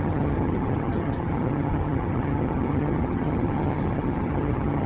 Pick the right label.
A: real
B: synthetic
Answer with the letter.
B